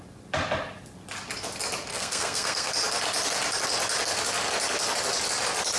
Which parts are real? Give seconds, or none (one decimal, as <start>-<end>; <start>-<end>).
0.0-1.9; 2.7-5.8